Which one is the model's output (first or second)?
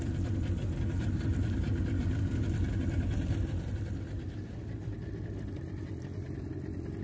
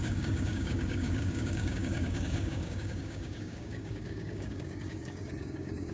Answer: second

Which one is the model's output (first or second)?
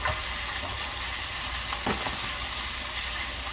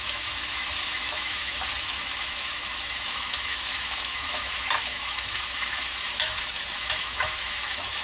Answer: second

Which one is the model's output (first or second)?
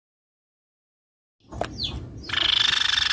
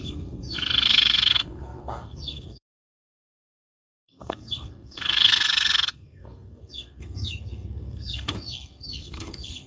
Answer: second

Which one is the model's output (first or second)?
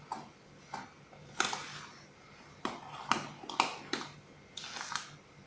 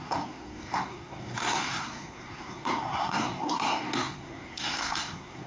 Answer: second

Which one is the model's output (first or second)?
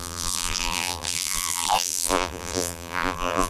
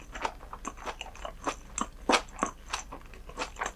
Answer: first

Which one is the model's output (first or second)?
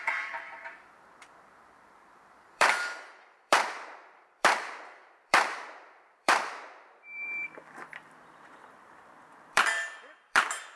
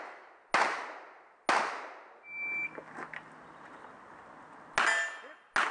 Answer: first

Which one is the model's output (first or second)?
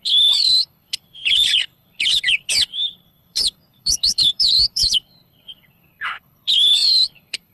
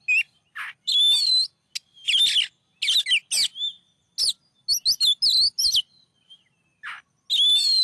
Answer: first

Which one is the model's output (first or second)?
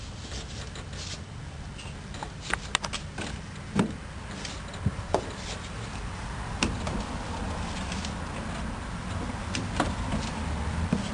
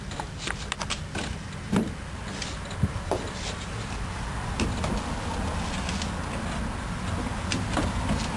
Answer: first